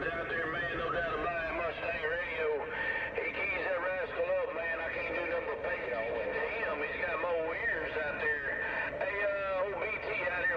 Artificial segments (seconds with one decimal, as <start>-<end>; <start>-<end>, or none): none